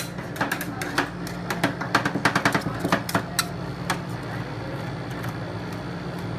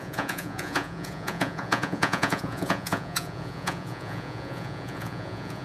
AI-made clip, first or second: second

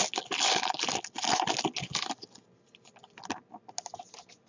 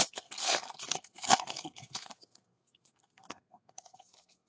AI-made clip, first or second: second